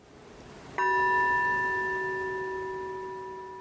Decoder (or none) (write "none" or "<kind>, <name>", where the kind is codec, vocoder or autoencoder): none